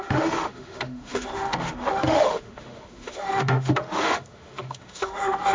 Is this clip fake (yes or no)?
yes